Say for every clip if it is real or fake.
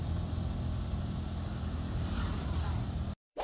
fake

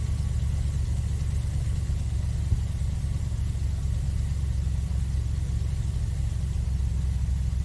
real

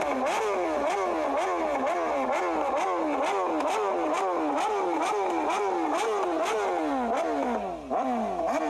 real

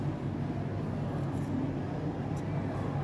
real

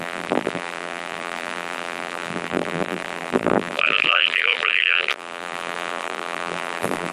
fake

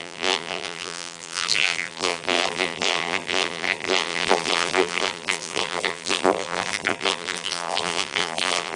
fake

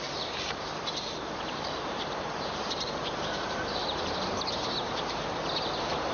fake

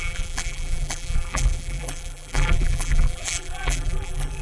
fake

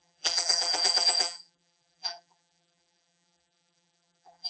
fake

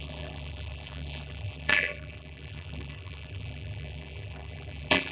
fake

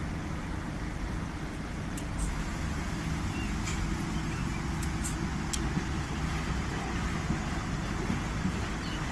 real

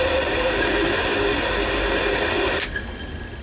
real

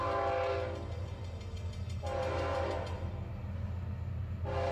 real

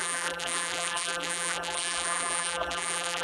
fake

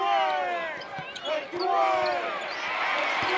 real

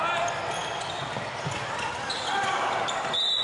real